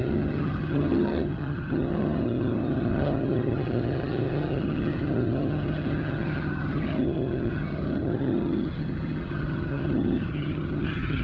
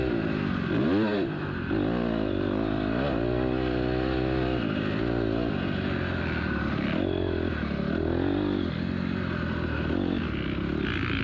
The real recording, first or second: second